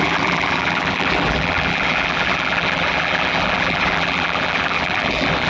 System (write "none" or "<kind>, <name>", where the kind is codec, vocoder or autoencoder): vocoder, BigVGAN v2